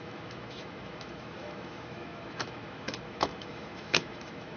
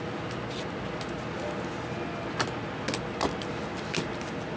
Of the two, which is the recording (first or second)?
second